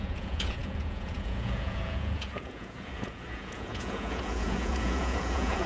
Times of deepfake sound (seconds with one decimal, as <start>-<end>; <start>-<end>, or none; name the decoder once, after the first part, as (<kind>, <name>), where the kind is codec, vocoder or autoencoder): 0.0-5.7 (vocoder, Vocos)